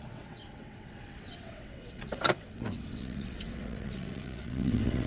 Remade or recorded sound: remade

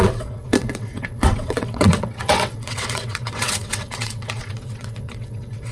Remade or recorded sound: remade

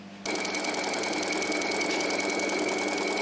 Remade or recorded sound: recorded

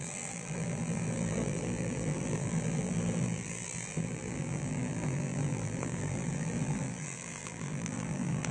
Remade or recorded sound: remade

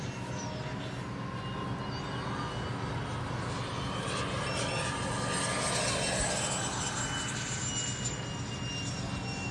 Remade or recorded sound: recorded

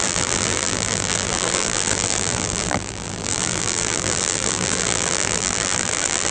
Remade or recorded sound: remade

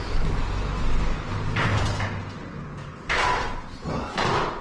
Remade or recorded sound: recorded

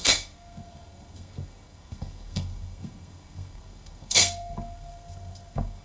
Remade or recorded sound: remade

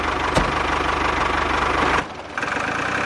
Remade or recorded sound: recorded